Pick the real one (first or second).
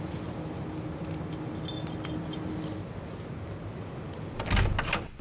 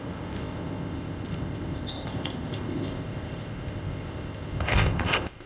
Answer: first